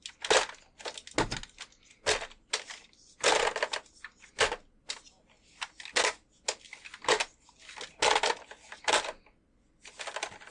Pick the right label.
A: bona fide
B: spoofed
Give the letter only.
A